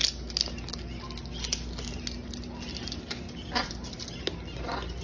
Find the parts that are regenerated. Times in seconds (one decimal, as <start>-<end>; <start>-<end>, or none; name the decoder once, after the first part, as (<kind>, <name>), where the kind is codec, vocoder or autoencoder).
none